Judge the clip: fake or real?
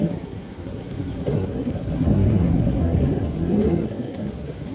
fake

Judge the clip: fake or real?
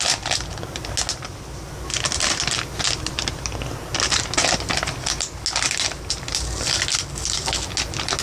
real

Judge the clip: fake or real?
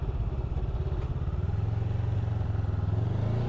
real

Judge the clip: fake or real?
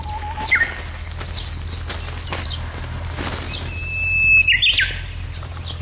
real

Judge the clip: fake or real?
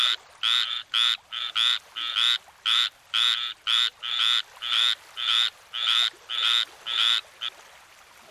real